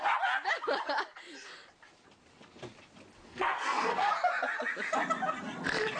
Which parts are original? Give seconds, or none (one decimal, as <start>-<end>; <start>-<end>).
0.0-3.3; 4.1-6.0